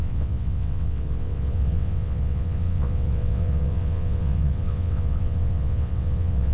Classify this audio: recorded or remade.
remade